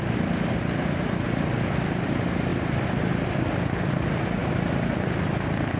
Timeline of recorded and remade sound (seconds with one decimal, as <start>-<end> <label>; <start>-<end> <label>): 0.0-5.8 recorded